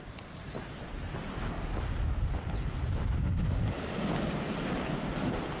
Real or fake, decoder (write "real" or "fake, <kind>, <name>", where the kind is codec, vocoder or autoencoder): real